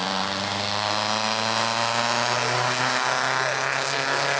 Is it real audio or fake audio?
real